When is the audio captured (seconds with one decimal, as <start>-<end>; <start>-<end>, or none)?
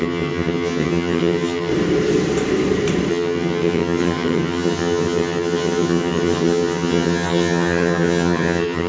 1.7-3.1